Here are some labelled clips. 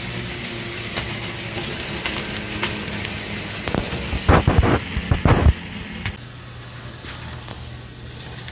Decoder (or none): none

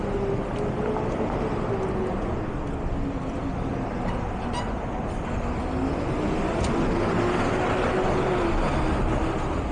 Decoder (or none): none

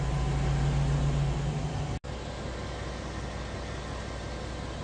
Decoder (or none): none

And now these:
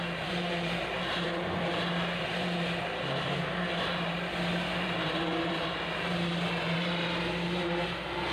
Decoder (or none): vocoder, BigVGAN v2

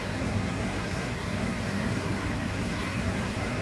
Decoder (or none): codec, SNAC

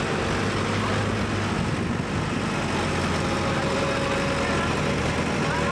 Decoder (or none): none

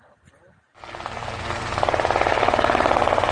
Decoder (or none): none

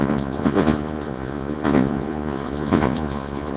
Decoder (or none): vocoder, Vocos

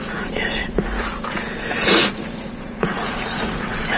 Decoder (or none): vocoder, Vocos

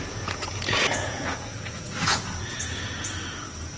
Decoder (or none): vocoder, Vocos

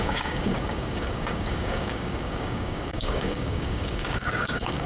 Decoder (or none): codec, DAC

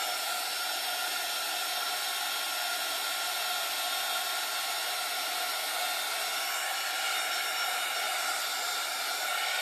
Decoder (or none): none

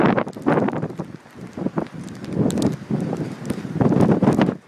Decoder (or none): none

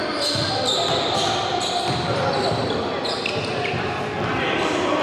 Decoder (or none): none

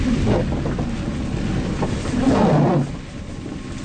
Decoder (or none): none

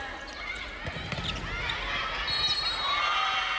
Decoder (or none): none